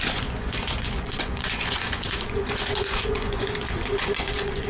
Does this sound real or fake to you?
fake